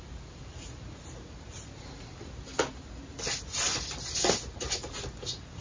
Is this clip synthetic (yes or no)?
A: no